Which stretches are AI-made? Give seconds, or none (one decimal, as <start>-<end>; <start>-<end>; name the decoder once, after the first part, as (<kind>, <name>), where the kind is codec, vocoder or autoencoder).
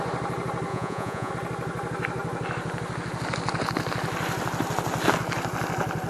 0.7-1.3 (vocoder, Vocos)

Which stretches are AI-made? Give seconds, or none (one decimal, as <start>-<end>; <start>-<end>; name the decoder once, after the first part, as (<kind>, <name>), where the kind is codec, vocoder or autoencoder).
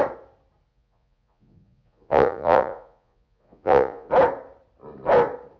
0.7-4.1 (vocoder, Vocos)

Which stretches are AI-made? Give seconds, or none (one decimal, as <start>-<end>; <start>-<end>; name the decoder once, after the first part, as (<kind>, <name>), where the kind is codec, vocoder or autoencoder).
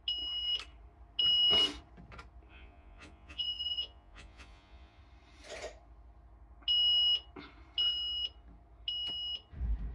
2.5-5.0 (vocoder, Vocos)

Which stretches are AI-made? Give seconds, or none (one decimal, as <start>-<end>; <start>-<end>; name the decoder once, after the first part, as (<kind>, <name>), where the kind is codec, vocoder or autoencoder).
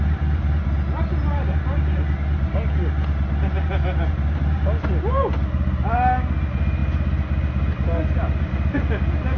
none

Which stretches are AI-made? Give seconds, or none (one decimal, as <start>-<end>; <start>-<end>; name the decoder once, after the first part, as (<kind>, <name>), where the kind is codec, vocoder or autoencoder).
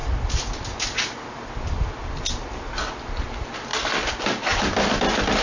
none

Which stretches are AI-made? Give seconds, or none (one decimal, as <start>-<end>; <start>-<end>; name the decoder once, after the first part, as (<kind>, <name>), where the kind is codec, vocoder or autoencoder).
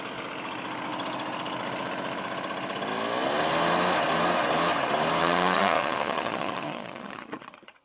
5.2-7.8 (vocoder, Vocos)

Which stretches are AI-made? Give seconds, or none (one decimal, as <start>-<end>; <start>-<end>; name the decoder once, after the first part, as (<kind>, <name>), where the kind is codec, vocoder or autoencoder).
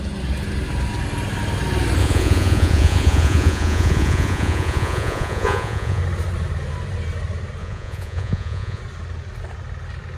2.0-6.0 (vocoder, Vocos); 7.6-8.8